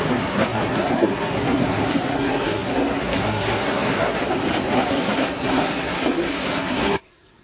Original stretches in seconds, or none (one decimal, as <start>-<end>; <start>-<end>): 4.2-4.7